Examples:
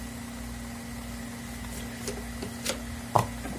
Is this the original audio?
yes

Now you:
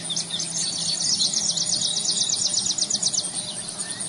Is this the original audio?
yes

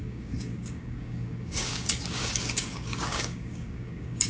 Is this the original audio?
no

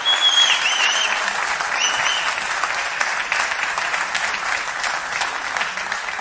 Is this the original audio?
yes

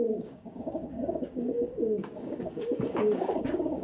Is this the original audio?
no